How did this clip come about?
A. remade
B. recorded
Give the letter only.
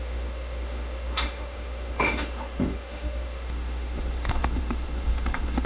A